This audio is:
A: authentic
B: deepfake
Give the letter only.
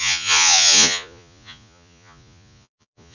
B